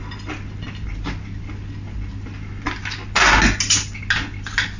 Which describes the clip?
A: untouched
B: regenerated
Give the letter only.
A